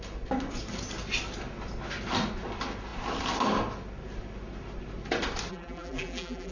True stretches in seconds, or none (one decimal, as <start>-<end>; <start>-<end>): 0.0-5.5